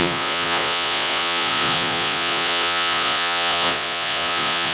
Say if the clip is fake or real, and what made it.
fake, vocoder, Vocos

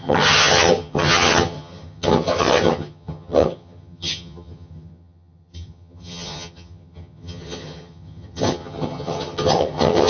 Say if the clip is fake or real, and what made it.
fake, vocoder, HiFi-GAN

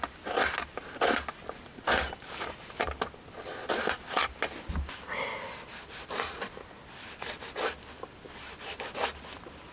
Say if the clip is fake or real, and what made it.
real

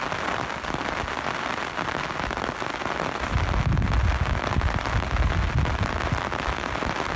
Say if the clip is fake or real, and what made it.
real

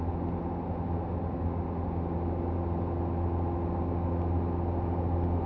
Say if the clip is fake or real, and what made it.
real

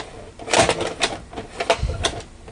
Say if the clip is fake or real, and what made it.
real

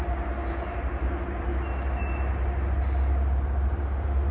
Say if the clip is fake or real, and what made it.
real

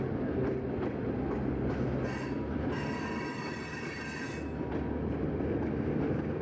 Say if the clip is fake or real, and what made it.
real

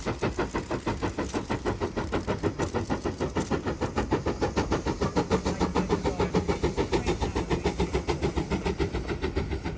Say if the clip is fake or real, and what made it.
real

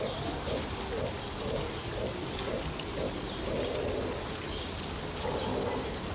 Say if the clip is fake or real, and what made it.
real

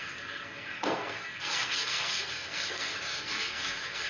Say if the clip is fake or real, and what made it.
fake, codec, SNAC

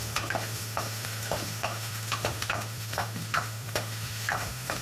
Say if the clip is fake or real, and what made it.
fake, autoencoder, DAC-VAE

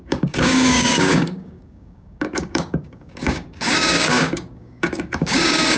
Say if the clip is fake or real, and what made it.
fake, codec, DAC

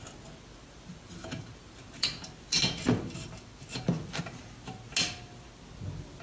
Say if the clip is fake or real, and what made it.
real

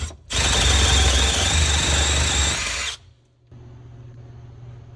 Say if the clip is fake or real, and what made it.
real